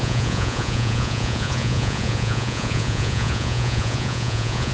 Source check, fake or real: fake